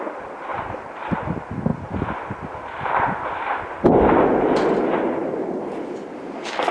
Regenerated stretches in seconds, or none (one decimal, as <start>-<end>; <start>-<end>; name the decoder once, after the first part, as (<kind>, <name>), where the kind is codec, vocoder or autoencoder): 0.5-1.0 (vocoder, BigVGAN v2)